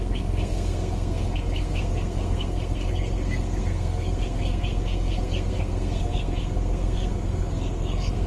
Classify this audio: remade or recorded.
remade